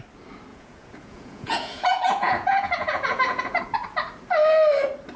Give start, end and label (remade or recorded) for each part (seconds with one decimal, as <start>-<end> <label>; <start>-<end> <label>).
0.0-0.5 recorded; 0.5-3.6 remade; 3.6-5.2 recorded